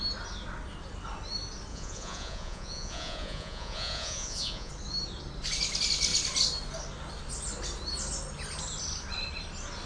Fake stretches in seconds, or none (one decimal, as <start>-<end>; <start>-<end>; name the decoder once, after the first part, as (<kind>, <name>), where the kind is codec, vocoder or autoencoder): 1.7-4.7 (vocoder, Vocos)